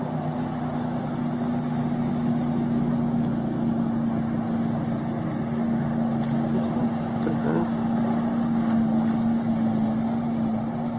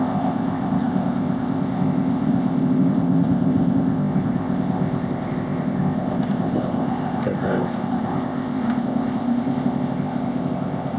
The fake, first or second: second